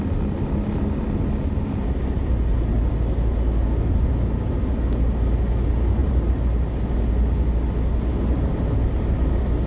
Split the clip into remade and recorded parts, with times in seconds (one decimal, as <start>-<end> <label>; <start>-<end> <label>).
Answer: 0.0-6.0 recorded; 6.0-7.0 remade; 7.0-9.7 recorded